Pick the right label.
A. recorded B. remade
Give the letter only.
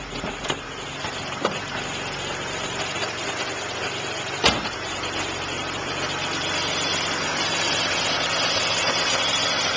B